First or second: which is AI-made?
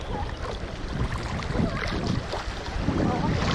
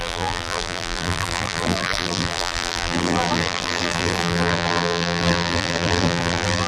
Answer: second